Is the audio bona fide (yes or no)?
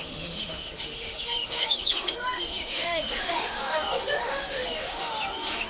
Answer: no